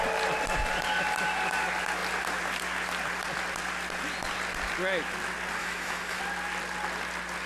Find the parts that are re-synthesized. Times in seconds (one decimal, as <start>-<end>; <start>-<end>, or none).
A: 5.6-6.2